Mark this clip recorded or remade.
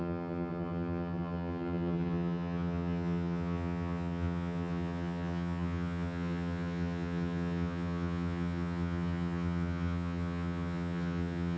remade